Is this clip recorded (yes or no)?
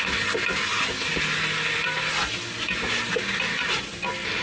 yes